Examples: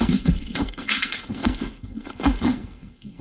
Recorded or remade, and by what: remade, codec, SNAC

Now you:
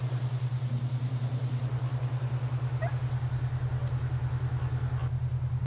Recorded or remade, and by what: recorded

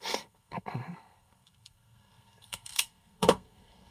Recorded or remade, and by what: remade, codec, SNAC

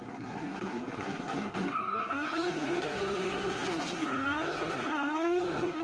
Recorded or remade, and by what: remade, codec, SNAC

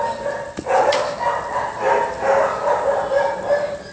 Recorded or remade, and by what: recorded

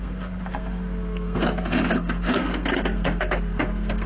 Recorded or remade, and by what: remade, codec, SNAC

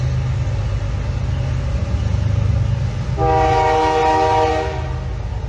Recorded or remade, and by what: recorded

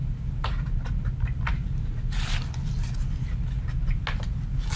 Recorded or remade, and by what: recorded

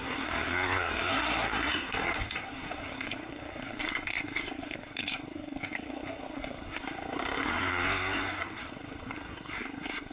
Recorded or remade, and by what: remade, codec, SNAC